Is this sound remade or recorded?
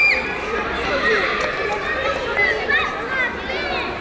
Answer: recorded